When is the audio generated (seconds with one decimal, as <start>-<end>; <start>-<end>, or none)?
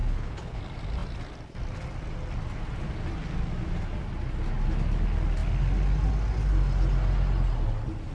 0.0-0.6